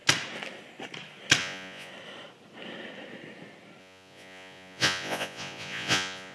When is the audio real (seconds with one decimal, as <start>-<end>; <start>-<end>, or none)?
0.0-1.4; 1.9-3.8